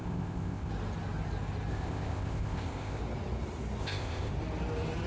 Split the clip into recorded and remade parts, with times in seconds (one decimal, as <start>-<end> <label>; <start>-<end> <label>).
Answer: 0.0-0.7 remade; 0.7-1.7 recorded; 1.7-3.0 remade; 3.0-3.8 recorded; 3.8-4.3 remade; 4.3-5.1 recorded